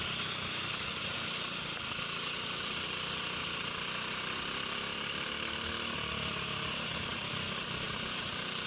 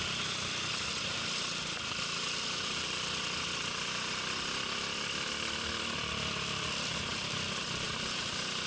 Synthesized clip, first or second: second